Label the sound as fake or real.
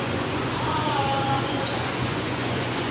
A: fake